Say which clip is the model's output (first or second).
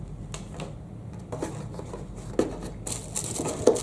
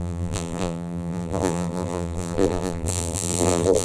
second